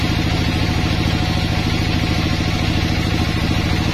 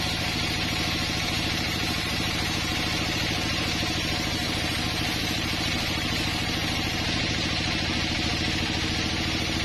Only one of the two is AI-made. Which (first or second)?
second